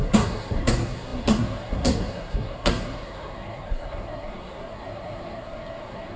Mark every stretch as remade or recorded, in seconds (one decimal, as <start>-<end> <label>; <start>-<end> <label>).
0.0-6.2 remade